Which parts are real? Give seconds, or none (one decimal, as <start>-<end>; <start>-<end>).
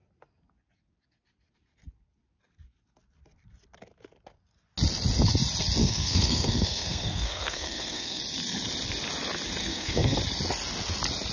0.0-5.8; 8.2-9.6; 10.2-11.3